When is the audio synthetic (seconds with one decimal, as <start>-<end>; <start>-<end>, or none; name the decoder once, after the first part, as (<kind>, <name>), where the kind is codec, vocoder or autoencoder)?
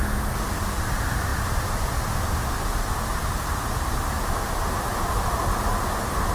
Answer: none